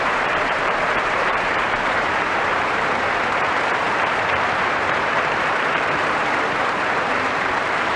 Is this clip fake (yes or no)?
yes